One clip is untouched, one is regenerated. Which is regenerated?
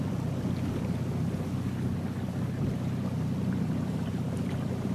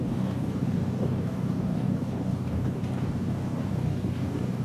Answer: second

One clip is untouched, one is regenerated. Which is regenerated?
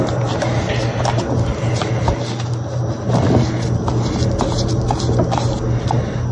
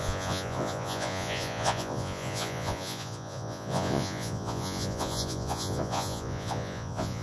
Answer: second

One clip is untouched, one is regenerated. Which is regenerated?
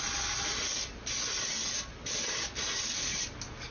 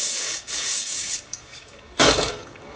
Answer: second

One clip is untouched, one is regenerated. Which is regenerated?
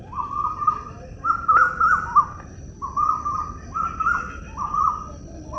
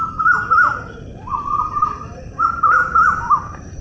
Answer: second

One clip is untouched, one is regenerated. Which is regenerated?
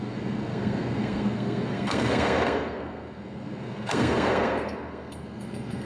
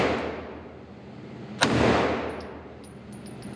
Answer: first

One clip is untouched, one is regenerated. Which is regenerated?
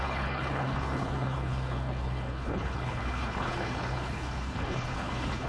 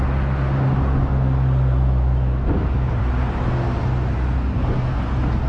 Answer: first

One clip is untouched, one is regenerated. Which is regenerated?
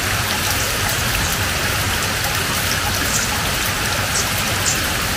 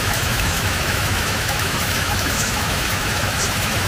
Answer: second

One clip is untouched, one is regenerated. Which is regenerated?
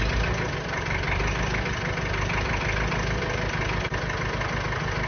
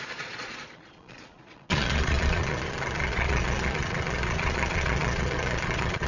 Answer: second